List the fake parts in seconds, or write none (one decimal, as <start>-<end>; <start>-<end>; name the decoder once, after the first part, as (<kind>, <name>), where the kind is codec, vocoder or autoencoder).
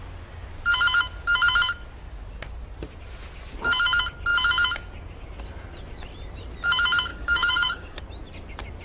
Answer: 7.1-8.0 (codec, DAC)